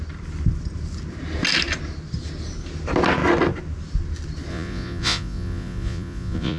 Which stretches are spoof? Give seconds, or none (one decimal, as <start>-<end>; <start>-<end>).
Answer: 4.5-6.6

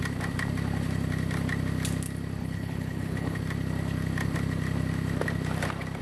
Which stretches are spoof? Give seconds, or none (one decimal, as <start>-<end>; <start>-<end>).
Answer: 2.4-3.4